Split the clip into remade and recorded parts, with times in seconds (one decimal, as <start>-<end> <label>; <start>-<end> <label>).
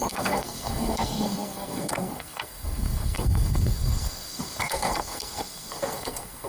0.0-6.5 remade